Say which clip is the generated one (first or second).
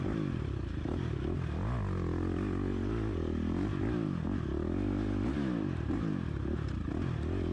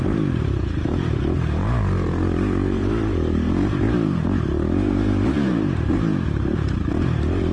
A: second